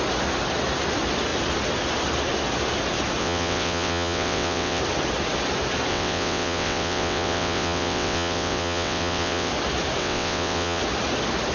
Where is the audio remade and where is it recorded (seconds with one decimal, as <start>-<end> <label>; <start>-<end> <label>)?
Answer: 0.0-3.2 recorded; 3.2-4.8 remade; 4.8-5.9 recorded; 5.9-9.5 remade; 9.5-10.0 recorded; 10.0-10.8 remade; 10.8-11.5 recorded